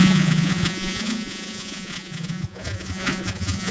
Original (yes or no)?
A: no